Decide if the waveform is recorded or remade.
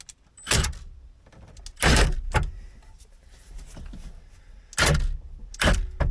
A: recorded